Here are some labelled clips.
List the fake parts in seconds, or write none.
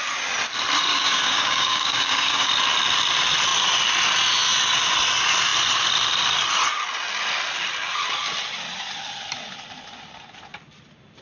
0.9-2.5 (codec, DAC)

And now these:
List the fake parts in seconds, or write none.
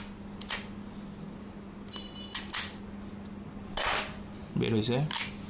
none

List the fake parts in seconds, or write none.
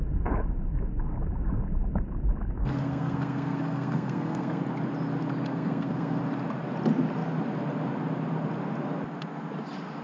2.6-4.6 (codec, SNAC); 5.5-6.2